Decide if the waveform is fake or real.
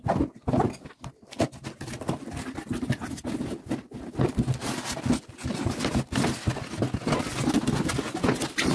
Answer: real